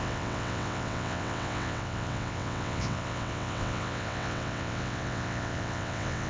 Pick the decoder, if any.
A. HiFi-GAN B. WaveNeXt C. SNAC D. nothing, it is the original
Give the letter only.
B